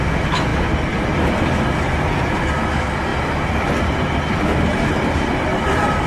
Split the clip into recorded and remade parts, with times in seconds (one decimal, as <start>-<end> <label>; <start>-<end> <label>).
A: 0.0-6.1 recorded